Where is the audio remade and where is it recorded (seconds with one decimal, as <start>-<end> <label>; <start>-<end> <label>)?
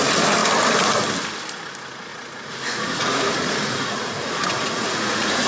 0.0-2.1 recorded; 2.1-5.5 remade